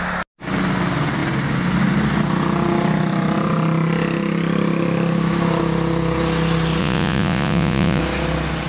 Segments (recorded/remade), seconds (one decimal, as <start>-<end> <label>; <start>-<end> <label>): 0.0-6.8 recorded; 6.8-8.0 remade; 8.0-8.7 recorded